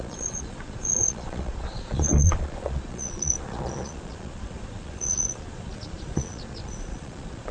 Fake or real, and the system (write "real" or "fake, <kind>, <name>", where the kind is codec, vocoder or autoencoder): fake, vocoder, Vocos